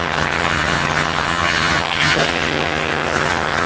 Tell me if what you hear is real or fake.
fake